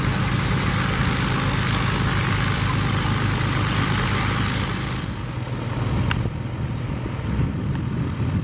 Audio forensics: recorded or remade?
recorded